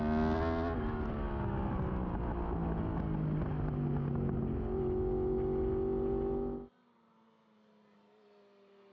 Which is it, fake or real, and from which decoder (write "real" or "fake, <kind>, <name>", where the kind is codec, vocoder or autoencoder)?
real